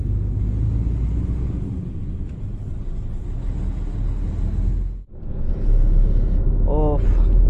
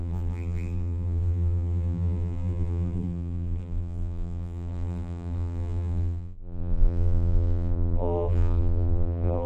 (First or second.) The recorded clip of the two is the first